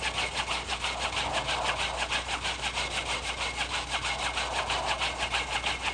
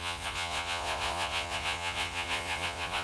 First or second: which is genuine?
first